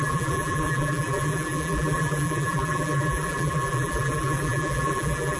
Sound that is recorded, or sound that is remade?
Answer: remade